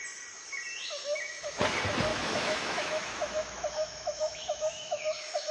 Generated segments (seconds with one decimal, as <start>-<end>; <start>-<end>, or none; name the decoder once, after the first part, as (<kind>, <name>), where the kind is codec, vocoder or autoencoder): 0.8-1.6 (autoencoder, DAC-VAE); 2.1-5.5